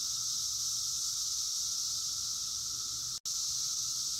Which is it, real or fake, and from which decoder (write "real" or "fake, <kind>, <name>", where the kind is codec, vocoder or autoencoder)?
real